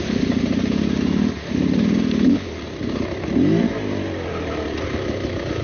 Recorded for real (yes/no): yes